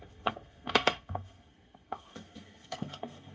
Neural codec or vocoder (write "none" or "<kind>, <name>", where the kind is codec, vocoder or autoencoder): codec, SNAC